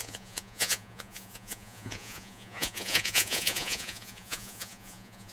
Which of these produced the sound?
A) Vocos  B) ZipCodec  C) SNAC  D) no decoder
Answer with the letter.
A